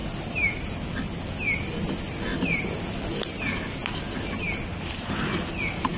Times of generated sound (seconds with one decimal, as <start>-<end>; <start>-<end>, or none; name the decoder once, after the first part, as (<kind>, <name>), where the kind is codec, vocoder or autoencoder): 0.0-0.9 (vocoder, BigVGAN v2)